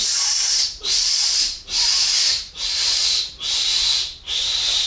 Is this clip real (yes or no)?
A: no